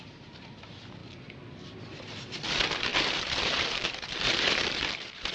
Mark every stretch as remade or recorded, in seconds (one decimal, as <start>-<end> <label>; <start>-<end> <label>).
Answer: 0.0-5.3 remade